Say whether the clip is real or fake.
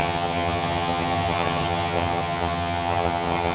fake